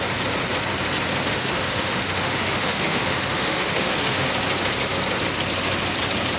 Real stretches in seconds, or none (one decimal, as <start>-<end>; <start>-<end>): 0.0-1.3; 4.3-6.4